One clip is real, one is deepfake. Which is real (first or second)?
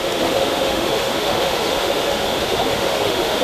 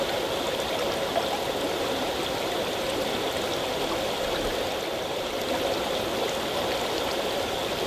second